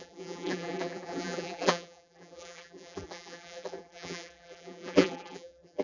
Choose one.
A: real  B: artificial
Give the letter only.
B